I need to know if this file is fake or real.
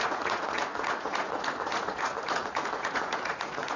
fake